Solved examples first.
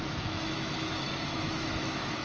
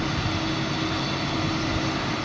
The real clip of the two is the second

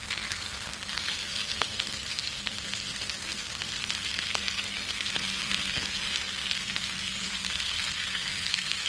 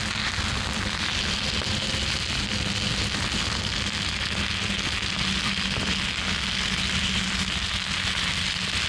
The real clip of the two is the second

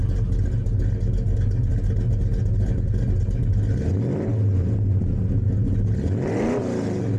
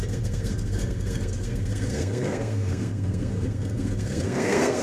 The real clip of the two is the first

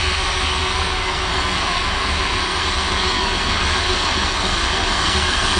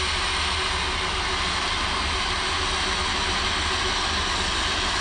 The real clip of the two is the second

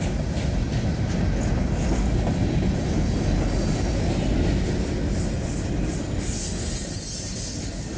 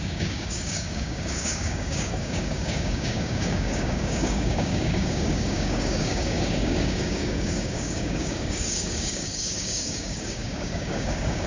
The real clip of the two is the first